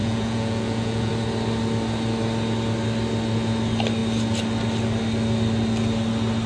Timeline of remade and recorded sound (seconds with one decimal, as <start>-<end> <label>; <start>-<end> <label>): 0.0-1.1 remade; 1.1-6.5 recorded